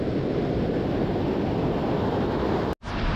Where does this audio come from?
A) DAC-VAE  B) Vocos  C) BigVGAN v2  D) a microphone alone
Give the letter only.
D